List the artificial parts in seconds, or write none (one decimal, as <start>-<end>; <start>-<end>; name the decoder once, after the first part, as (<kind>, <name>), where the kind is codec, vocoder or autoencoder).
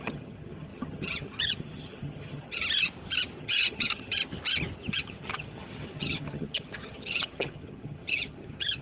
0.0-2.6 (vocoder, HiFi-GAN); 3.4-4.2; 4.9-8.8